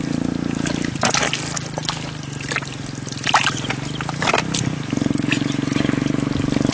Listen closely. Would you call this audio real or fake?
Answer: real